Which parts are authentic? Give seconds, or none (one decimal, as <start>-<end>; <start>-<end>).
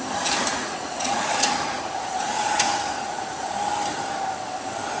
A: 0.0-0.5; 3.5-5.0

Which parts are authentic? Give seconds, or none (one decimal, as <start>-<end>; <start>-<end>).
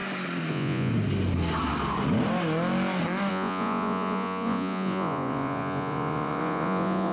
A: 0.0-0.5; 0.9-3.3